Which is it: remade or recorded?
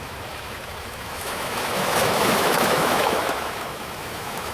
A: remade